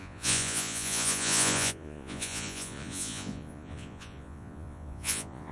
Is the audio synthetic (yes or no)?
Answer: yes